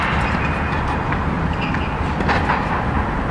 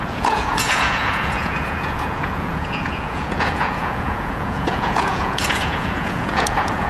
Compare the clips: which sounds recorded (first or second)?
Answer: first